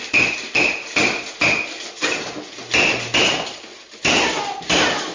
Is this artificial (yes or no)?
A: no